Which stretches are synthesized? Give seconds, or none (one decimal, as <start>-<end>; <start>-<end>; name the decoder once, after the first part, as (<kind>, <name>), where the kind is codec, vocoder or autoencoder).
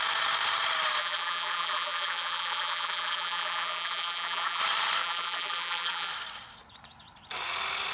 1.0-4.6 (vocoder, BigVGAN v2); 5.0-6.1